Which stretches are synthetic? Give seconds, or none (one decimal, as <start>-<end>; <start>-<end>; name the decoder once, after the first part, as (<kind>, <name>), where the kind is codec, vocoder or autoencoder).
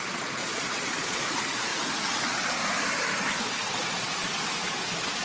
0.0-1.7 (vocoder, Vocos); 2.2-2.6; 3.8-4.2